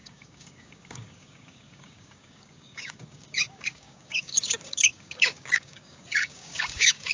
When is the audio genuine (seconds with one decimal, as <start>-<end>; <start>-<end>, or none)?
none